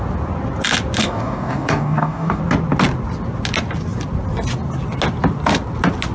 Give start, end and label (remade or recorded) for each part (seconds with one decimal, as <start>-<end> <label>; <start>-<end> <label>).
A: 0.0-1.0 recorded; 1.0-2.4 remade; 2.4-6.1 recorded